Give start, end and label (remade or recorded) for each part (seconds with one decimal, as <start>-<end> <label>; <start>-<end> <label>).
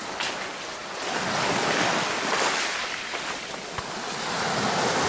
0.0-0.8 recorded; 0.8-3.9 remade; 3.9-5.1 recorded